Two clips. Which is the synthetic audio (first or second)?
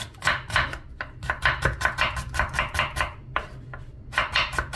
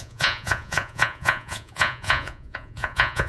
second